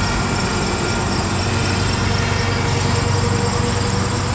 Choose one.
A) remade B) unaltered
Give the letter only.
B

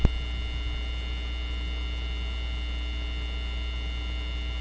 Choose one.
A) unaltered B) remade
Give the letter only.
A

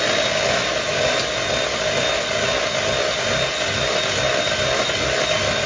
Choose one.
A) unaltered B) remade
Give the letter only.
A